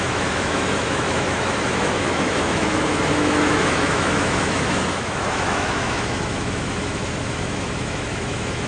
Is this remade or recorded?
remade